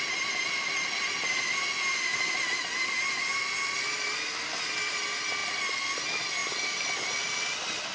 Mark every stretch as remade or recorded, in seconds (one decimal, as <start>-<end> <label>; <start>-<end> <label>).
0.0-6.4 recorded; 6.4-7.4 remade; 7.4-7.9 recorded